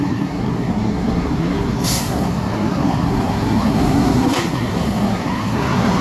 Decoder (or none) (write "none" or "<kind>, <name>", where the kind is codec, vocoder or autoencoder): codec, SNAC